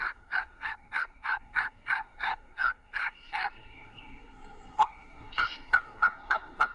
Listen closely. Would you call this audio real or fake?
fake